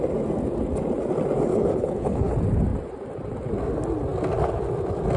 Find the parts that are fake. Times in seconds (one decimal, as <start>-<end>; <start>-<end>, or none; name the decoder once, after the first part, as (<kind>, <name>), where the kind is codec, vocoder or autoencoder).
1.5-2.3 (codec, HILCodec)